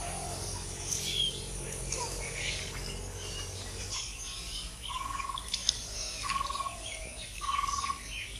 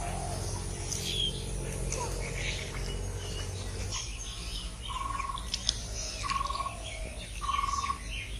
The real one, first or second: second